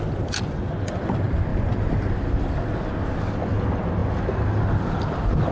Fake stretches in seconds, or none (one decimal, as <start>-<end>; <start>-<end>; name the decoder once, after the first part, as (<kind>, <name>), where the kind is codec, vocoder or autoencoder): 1.5-2.1 (vocoder, BigVGAN v2)